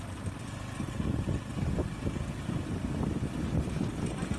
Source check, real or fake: real